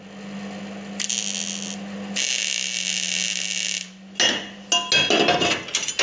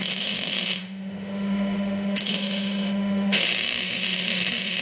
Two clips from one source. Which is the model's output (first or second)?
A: second